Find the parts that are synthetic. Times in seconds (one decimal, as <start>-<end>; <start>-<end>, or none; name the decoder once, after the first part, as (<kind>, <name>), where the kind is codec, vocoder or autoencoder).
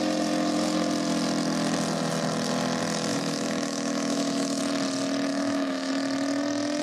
3.1-4.6 (autoencoder, DAC-VAE); 5.3-5.9